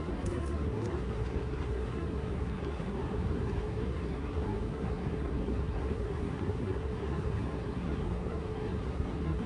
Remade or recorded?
remade